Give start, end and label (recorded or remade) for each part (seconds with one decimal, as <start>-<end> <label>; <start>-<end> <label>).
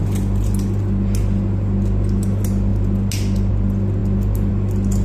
0.0-5.0 recorded